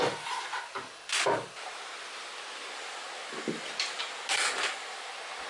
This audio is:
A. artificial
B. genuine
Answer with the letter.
B